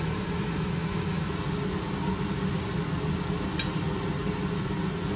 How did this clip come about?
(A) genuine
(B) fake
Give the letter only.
A